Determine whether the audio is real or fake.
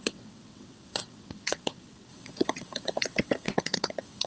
fake